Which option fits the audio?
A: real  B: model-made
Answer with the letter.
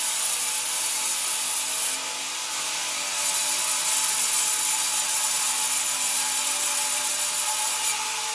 A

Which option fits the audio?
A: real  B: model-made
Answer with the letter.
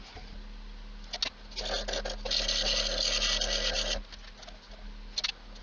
A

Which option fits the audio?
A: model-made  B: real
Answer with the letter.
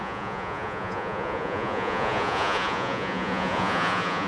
A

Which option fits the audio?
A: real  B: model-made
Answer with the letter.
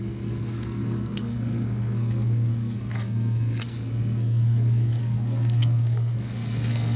B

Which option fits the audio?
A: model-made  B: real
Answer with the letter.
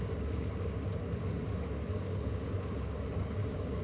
A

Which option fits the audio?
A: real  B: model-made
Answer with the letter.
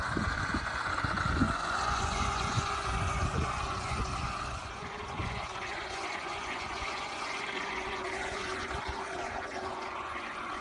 B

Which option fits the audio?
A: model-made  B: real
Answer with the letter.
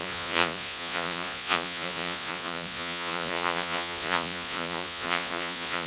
A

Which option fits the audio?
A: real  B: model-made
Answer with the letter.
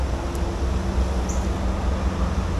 A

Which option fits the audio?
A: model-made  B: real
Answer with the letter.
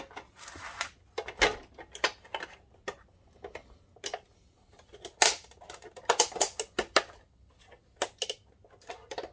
B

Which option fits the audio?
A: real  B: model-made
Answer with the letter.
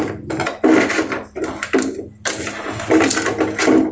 A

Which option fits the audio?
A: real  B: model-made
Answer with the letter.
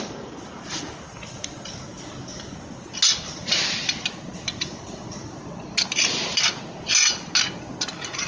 A